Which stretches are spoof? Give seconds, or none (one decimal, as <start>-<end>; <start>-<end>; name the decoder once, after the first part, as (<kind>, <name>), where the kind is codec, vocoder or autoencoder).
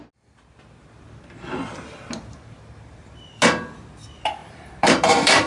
4.4-5.5 (vocoder, BigVGAN v2)